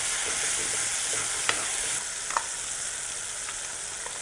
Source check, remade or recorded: recorded